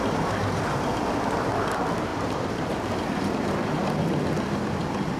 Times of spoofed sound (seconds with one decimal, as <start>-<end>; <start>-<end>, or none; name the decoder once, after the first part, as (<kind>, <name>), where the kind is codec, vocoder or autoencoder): 0.0-5.2 (vocoder, BigVGAN v2)